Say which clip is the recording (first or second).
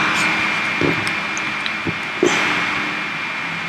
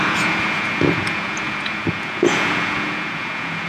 first